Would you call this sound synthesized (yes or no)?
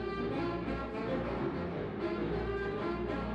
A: no